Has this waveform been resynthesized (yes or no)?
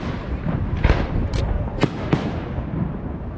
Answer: no